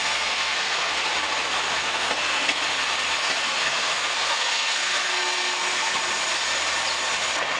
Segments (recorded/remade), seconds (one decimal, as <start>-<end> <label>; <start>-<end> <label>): 0.0-0.9 remade; 0.9-1.8 recorded; 1.8-2.6 remade; 2.6-3.4 recorded; 3.4-6.0 remade; 6.0-7.6 recorded